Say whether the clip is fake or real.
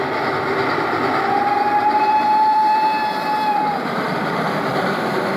fake